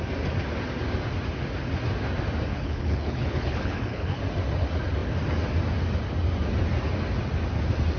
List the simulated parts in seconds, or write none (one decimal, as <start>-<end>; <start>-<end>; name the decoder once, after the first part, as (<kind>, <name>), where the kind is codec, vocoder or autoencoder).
2.5-4.2 (codec, HILCodec)